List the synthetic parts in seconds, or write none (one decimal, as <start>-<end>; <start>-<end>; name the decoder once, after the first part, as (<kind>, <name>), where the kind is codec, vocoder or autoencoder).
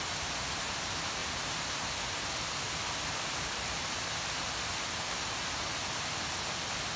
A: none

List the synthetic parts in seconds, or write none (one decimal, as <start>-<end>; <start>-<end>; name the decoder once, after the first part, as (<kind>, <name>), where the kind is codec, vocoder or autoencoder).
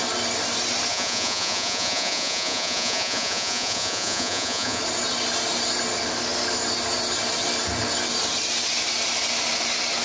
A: 0.9-4.8 (vocoder, Vocos)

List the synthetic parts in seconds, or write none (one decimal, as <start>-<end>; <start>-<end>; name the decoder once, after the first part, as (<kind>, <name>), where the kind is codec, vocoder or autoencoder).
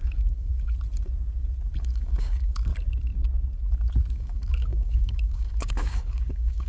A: 0.0-0.5 (codec, DAC); 1.8-2.7; 4.1-6.7